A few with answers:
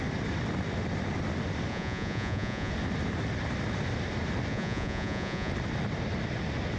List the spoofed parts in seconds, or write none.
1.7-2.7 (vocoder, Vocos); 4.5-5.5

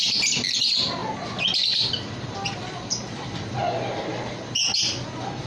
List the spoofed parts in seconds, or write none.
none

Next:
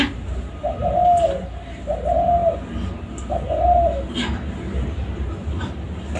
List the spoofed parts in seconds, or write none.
none

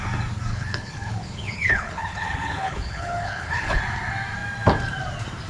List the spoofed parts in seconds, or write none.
0.5-3.8 (codec, HILCodec)